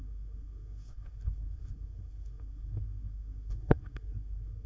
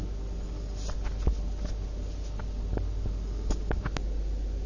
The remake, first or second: first